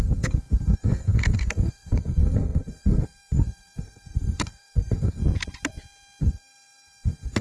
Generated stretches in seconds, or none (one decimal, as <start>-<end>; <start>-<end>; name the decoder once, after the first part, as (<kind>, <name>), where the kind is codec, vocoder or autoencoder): 0.0-5.2 (codec, SNAC); 6.2-7.4